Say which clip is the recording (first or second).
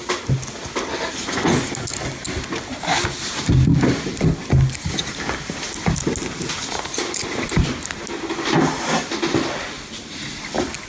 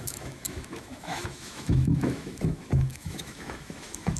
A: first